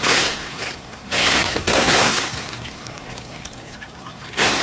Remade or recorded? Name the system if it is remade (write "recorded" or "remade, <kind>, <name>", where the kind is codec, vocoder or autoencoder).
remade, codec, SNAC